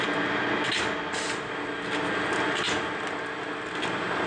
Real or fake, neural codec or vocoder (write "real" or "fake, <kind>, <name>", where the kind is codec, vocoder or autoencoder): real